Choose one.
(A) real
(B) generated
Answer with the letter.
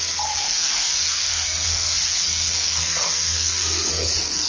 B